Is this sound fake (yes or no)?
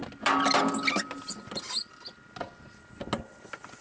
no